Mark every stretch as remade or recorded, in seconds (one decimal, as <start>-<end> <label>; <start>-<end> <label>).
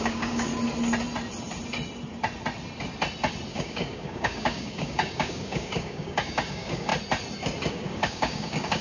0.0-0.5 remade; 0.5-3.5 recorded; 3.5-6.9 remade; 6.9-7.7 recorded; 7.7-8.8 remade